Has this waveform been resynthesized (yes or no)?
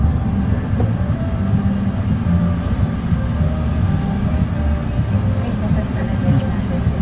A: no